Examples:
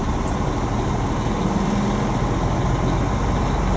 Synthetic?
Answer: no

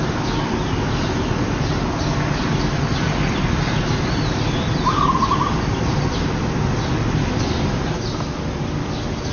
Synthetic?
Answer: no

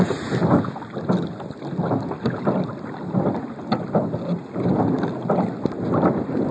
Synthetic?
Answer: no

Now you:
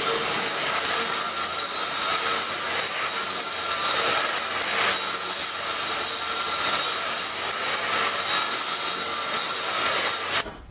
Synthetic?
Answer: no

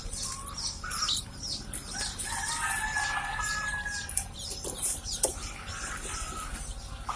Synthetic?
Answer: no